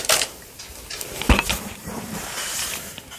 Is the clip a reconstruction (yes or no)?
yes